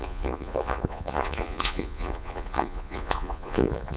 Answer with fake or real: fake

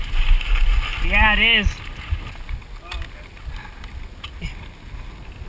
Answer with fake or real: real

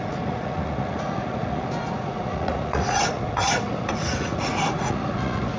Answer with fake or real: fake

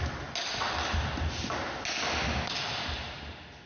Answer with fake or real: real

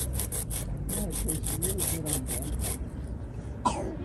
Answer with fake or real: real